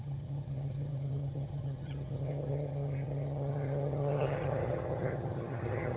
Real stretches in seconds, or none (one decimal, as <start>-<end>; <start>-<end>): none